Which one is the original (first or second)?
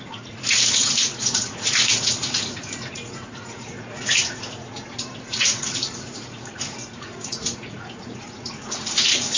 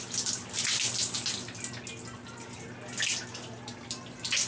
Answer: second